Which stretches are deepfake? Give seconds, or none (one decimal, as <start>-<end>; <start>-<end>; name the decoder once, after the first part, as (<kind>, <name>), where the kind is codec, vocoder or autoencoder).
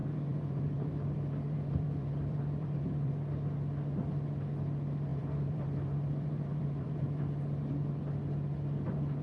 0.0-3.1 (vocoder, BigVGAN v2); 5.1-7.2